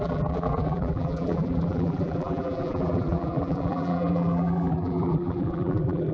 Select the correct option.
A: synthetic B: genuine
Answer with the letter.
A